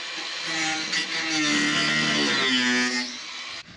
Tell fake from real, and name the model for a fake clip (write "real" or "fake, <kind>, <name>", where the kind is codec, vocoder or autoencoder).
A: real